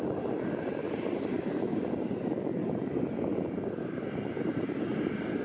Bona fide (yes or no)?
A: yes